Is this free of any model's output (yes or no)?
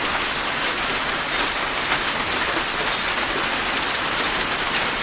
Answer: yes